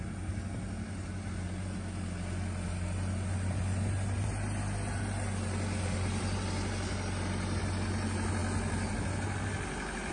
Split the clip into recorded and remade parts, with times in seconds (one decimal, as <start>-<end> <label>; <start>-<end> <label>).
0.0-10.1 recorded